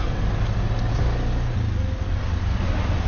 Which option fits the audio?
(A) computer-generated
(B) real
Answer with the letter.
B